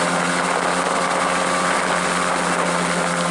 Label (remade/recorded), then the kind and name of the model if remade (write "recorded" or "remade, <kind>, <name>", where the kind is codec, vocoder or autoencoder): recorded